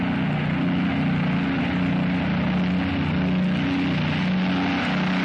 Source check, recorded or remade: recorded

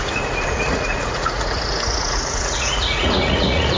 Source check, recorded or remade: remade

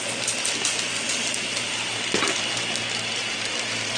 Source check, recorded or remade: recorded